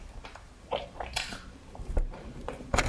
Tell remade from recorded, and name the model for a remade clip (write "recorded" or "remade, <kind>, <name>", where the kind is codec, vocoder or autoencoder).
remade, vocoder, BigVGAN v2